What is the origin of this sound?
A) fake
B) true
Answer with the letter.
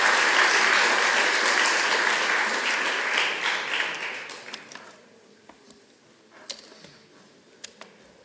B